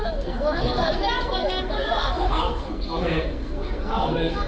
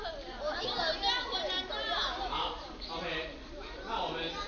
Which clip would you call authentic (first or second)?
second